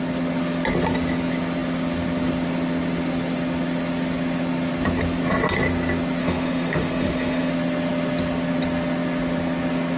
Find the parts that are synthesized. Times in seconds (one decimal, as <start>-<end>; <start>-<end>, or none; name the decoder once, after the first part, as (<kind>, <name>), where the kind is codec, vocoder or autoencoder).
6.2-7.5 (autoencoder, DAC-VAE)